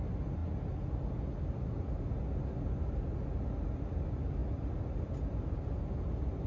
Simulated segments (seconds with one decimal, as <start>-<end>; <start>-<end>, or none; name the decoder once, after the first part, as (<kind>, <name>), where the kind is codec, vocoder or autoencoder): none